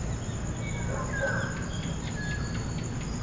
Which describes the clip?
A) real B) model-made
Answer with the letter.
A